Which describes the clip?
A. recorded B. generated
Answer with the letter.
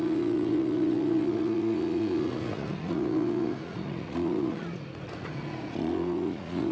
B